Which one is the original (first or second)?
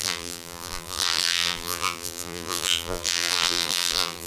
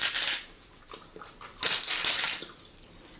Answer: second